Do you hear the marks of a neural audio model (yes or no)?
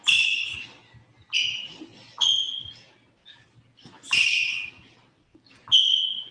no